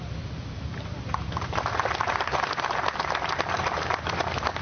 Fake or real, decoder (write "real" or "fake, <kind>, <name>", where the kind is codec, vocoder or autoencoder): real